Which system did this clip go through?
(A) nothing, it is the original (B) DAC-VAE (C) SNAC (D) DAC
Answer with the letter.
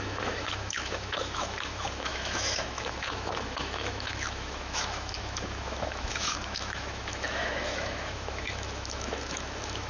B